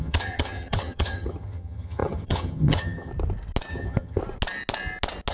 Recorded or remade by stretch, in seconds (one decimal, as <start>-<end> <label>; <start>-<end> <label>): 0.0-3.1 remade; 3.1-3.7 recorded; 3.7-4.2 remade; 4.2-5.3 recorded